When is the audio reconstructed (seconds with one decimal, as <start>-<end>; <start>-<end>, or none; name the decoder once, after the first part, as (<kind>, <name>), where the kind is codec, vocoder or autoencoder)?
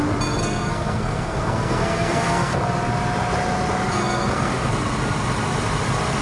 0.4-2.6 (codec, SNAC); 3.9-4.7